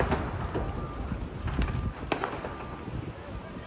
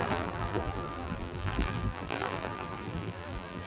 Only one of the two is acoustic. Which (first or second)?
first